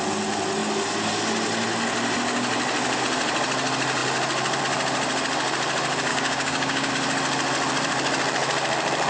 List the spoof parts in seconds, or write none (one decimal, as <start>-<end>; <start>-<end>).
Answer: 6.1-6.9